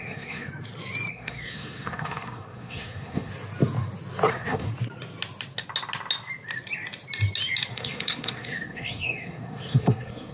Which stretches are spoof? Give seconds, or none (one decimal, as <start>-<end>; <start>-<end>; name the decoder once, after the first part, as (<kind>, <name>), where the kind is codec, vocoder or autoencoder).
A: 0.0-0.5 (codec, SNAC); 1.1-3.3; 4.3-4.7; 7.7-10.3